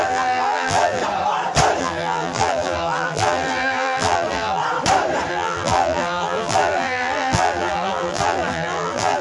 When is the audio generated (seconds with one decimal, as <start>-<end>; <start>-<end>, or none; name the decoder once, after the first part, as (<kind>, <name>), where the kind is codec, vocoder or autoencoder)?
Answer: 0.0-1.0 (vocoder, BigVGAN v2); 1.8-4.6; 5.3-9.2

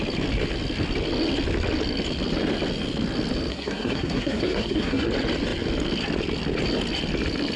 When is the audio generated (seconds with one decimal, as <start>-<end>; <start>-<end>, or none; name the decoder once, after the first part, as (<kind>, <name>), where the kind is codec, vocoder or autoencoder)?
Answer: 3.5-5.1 (codec, SNAC)

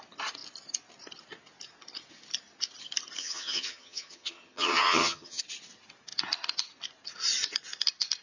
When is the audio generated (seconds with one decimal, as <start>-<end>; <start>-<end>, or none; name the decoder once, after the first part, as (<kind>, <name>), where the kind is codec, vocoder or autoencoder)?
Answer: 3.2-5.4 (vocoder, HiFi-GAN)